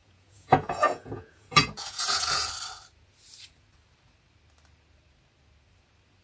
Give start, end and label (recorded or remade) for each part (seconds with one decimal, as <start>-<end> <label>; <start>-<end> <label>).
0.0-2.5 remade; 2.5-6.2 recorded